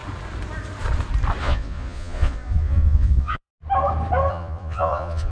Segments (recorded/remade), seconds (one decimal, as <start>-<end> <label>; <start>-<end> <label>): 0.0-1.4 recorded; 1.4-3.5 remade; 3.5-4.3 recorded; 4.3-5.3 remade

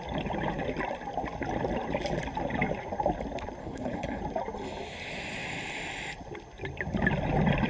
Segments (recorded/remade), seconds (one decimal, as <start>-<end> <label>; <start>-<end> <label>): 0.0-3.6 recorded; 3.6-4.2 remade; 4.2-7.7 recorded

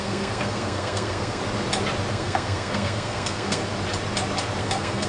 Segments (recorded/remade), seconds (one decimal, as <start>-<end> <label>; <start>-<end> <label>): 0.0-1.4 remade; 1.4-2.1 recorded; 2.1-3.6 remade; 3.6-4.6 recorded; 4.6-5.1 remade

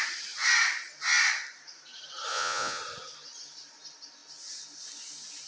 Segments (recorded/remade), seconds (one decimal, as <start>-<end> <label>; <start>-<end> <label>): 0.0-2.3 recorded; 2.3-2.8 remade; 2.8-5.5 recorded

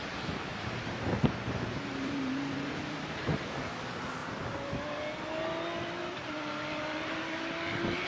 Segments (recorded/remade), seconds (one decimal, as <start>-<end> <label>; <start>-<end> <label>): 0.0-0.5 recorded; 0.5-3.5 remade; 3.5-4.2 recorded; 4.2-4.7 remade; 4.7-8.1 recorded